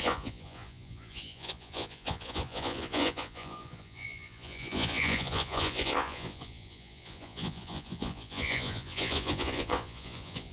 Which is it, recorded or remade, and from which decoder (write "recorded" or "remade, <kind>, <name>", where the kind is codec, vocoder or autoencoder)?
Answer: remade, vocoder, Vocos